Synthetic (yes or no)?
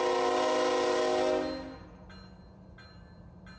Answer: no